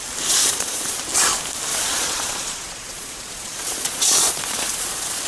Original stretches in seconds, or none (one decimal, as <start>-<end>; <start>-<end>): 0.0-0.4; 1.0-1.7

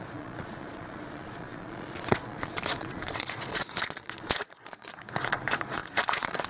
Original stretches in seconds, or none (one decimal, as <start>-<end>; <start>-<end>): none